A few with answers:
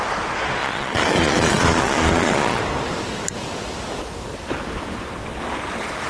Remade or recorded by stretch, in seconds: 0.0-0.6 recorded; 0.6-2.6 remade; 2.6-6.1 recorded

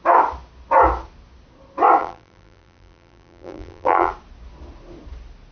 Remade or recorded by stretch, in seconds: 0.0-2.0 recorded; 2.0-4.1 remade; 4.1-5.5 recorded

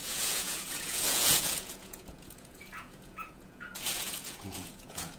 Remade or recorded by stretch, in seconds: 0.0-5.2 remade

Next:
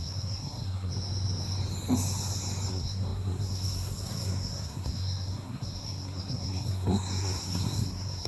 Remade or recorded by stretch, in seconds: 0.0-0.9 remade; 0.9-2.7 recorded; 2.7-8.3 remade

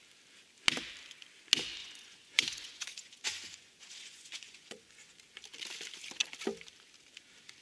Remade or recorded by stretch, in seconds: 0.0-1.8 recorded; 1.8-5.2 remade; 5.2-7.6 recorded